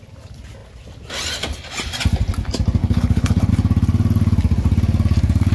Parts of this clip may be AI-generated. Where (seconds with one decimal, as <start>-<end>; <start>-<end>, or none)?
2.8-3.5